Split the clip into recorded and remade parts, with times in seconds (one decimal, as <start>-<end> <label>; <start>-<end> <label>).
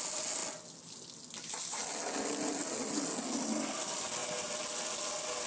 0.0-5.5 recorded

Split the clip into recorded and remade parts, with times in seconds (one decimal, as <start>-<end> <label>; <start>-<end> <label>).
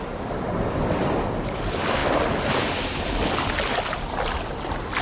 0.0-5.0 recorded